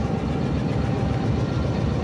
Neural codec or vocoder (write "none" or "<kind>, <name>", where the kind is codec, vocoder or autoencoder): none